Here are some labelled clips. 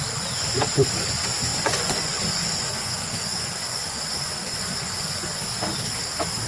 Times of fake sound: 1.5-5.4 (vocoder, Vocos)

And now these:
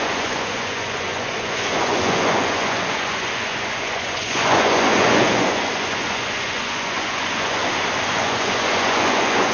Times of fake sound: 0.0-7.6 (vocoder, Vocos); 8.1-9.5

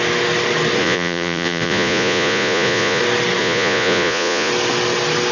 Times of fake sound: 0.8-3.0 (vocoder, Vocos); 3.4-4.5

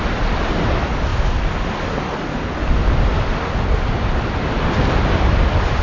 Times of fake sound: none